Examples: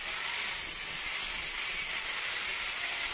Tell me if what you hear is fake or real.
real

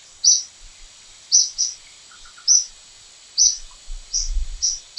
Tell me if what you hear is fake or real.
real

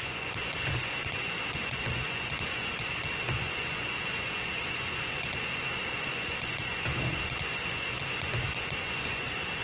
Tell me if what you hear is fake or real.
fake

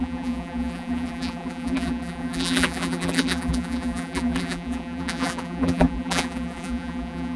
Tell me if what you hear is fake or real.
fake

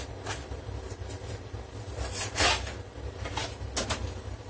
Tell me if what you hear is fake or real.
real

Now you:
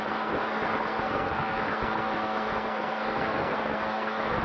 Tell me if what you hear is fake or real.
fake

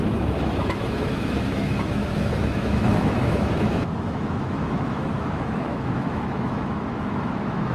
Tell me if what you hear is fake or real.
fake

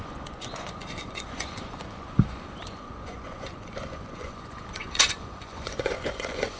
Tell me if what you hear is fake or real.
fake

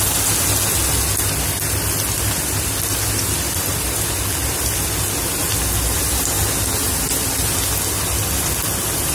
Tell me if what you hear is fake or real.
real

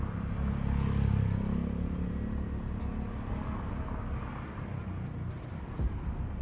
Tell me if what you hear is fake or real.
real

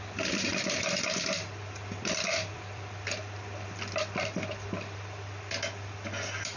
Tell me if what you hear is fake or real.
fake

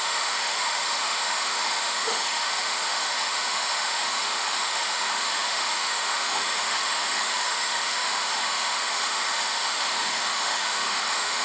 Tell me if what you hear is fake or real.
fake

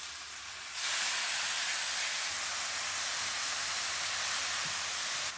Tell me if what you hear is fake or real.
real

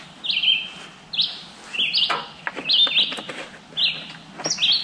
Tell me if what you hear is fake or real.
real